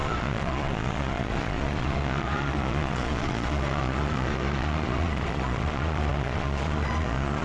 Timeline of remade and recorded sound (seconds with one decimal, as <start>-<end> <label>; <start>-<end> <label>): 0.0-7.4 remade

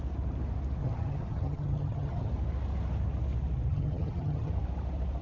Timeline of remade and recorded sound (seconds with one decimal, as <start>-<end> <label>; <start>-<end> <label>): 0.0-0.8 recorded; 0.8-2.3 remade; 2.3-3.7 recorded; 3.7-4.5 remade; 4.5-5.2 recorded

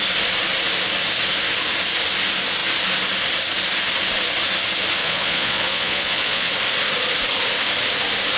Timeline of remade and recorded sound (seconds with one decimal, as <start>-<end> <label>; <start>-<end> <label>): 0.0-5.0 recorded; 5.0-6.5 remade; 6.5-8.4 recorded

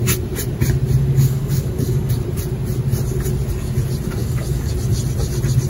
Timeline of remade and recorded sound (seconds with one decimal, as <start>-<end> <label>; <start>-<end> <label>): 0.0-1.0 recorded; 1.0-2.1 remade; 2.1-4.2 recorded; 4.2-4.7 remade; 4.7-5.7 recorded

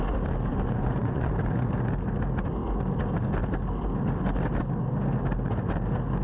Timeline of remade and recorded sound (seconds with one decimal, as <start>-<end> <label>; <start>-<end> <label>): 0.0-0.5 recorded; 0.5-1.3 remade; 1.3-6.2 recorded

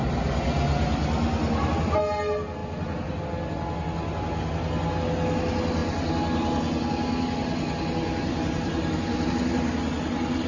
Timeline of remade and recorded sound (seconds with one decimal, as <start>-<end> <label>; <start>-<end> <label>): 0.0-10.5 recorded

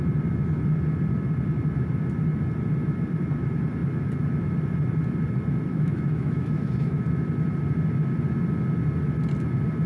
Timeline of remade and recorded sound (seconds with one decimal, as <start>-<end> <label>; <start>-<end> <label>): 0.0-5.7 recorded; 5.7-7.0 remade; 7.0-9.9 recorded

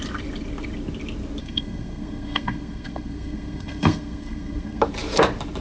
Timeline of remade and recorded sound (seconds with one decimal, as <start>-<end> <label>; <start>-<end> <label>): 0.0-1.4 recorded; 1.4-4.8 remade; 4.8-5.6 recorded